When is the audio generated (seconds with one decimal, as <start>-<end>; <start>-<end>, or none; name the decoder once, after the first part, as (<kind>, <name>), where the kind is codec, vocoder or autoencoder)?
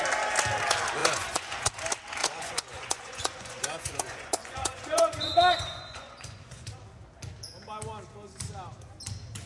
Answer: 1.0-1.7 (vocoder, Vocos); 2.2-6.7